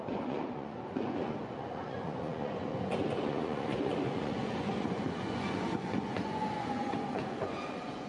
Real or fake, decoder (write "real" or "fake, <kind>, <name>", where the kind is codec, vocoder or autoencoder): fake, vocoder, Vocos